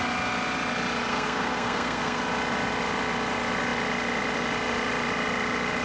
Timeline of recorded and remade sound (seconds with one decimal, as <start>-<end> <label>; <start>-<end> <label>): 0.0-1.1 recorded; 1.1-2.2 remade; 2.2-5.8 recorded